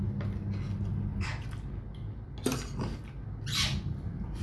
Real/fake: real